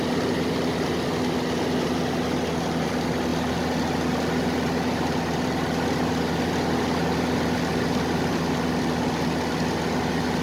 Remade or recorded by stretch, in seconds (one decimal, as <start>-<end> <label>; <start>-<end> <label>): 0.0-10.4 recorded